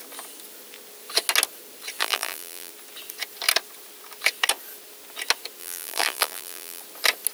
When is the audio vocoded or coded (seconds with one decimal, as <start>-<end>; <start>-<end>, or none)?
2.0-2.7; 5.6-6.8